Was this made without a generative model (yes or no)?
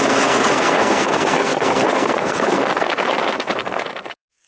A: no